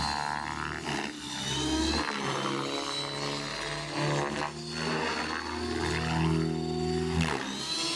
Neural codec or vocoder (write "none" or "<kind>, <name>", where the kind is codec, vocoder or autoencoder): none